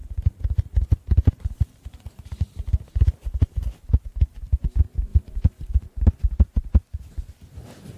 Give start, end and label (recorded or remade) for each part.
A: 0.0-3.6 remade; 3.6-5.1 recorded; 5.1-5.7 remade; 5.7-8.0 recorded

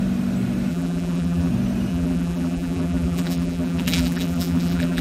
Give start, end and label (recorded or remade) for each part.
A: 0.0-0.7 recorded; 0.7-1.5 remade; 1.5-1.9 recorded; 1.9-5.0 remade